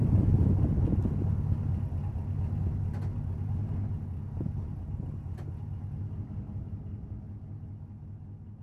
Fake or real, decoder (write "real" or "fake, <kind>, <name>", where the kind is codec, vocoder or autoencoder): real